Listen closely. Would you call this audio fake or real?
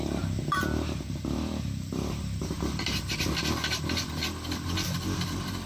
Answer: fake